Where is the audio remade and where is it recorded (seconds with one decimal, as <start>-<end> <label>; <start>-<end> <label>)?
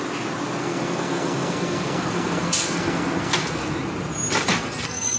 0.0-0.6 recorded; 0.6-3.7 remade; 3.7-4.5 recorded; 4.5-5.2 remade